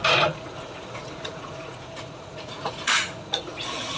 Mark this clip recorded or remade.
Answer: remade